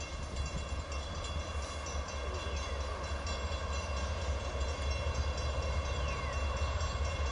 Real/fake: real